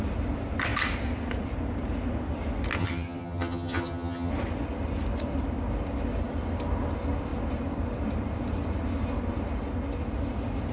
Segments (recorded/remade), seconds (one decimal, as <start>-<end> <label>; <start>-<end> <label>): 0.0-2.8 recorded; 2.8-4.3 remade; 4.3-10.7 recorded

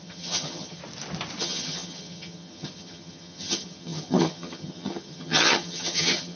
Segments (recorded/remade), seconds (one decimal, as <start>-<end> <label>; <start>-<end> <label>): 0.0-0.8 remade; 0.8-1.4 recorded; 1.4-6.4 remade

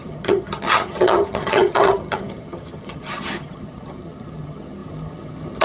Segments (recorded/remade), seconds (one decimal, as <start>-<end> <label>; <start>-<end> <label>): 0.0-5.6 remade

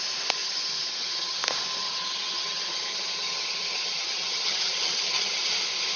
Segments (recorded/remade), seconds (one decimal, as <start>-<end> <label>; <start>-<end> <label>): 0.0-0.4 recorded; 0.4-1.4 remade; 1.4-1.8 recorded; 1.8-5.4 remade; 5.4-6.0 recorded